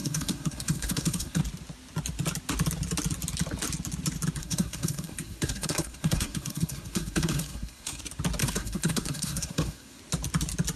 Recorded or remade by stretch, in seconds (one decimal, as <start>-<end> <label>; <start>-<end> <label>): 0.0-1.4 remade; 1.4-4.4 recorded; 4.4-8.0 remade; 8.0-8.4 recorded; 8.4-10.0 remade; 10.0-10.8 recorded